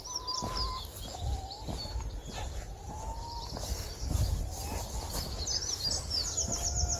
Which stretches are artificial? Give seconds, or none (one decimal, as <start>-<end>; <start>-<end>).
none